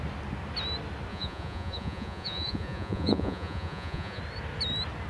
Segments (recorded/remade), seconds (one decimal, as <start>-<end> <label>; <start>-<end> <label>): 0.0-1.1 recorded; 1.1-4.2 remade; 4.2-5.1 recorded